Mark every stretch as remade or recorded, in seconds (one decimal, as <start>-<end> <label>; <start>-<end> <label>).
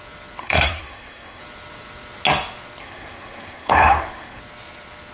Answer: 0.0-0.4 recorded; 0.4-1.4 remade; 1.4-2.8 recorded; 2.8-4.4 remade; 4.4-5.1 recorded